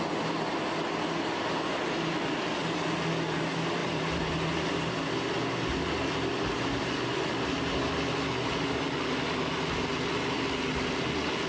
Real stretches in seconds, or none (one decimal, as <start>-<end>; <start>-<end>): 0.0-3.8; 4.9-11.5